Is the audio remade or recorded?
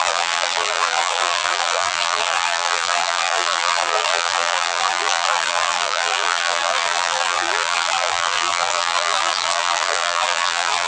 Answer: remade